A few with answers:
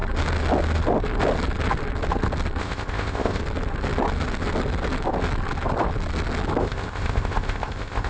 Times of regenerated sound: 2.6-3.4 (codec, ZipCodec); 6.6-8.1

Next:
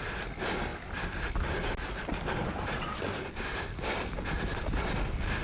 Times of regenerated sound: none

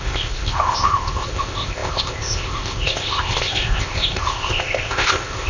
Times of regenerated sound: 0.0-5.5 (codec, ZipCodec)

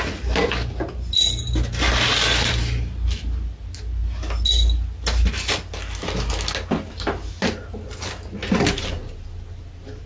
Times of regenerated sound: none

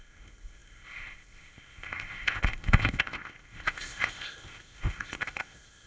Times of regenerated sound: 0.0-5.9 (codec, ZipCodec)

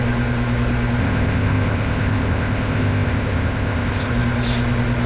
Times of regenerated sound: 1.0-4.1 (codec, ZipCodec)

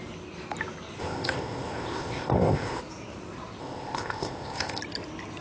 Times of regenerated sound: 1.0-2.8 (codec, ZipCodec); 3.6-4.8